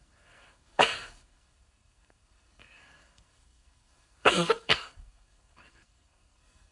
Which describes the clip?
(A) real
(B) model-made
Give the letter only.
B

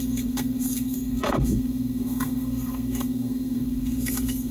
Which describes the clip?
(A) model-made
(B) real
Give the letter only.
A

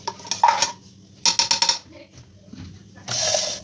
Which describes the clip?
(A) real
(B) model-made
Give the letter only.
A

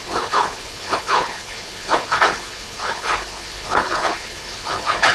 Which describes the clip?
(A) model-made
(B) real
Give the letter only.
A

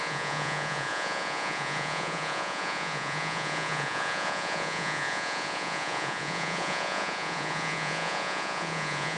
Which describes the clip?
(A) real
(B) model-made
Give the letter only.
B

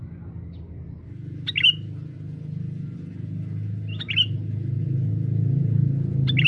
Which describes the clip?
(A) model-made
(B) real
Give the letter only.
B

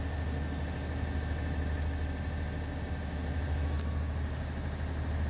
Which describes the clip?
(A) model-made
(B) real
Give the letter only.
B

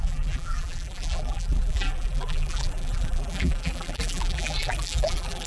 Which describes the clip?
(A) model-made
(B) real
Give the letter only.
A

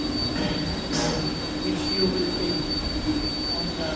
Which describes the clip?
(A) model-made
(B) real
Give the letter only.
B